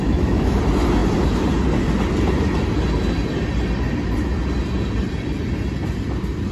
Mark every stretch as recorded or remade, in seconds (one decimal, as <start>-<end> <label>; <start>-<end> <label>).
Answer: 0.0-0.6 remade; 0.6-6.5 recorded